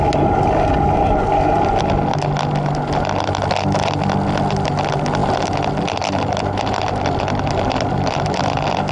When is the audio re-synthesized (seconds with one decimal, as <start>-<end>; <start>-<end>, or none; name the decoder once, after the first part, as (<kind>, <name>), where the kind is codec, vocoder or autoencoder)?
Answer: 5.2-8.9 (vocoder, BigVGAN v2)